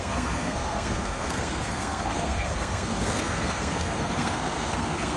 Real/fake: fake